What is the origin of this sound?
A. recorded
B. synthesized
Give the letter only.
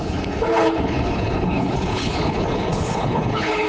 B